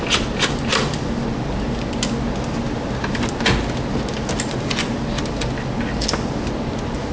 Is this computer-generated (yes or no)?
no